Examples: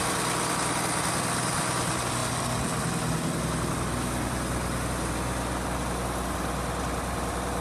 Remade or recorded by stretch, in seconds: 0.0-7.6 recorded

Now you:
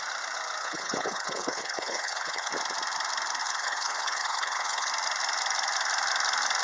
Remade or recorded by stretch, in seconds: 0.0-0.6 recorded; 0.6-2.5 remade; 2.5-3.4 recorded; 3.4-4.9 remade; 4.9-6.6 recorded

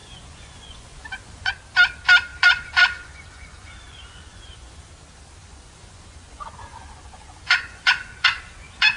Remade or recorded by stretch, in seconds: 0.0-1.5 remade; 1.5-2.3 recorded; 2.3-4.9 remade; 4.9-5.4 recorded; 5.4-9.0 remade

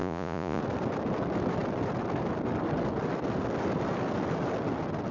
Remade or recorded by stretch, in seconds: 0.0-0.6 remade; 0.6-5.1 recorded

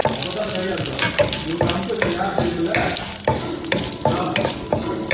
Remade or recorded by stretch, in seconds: 0.0-5.1 recorded

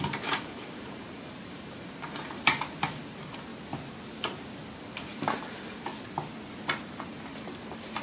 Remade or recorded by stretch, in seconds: 0.0-3.5 remade; 3.5-4.8 recorded; 4.8-5.9 remade; 5.9-7.0 recorded; 7.0-8.0 remade